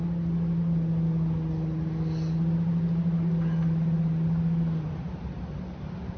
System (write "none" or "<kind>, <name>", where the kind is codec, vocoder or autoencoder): none